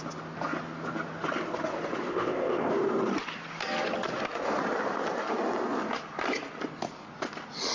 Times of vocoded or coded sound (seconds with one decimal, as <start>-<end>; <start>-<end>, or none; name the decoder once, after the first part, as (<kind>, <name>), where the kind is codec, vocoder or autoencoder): 2.1-2.7 (codec, ZipCodec)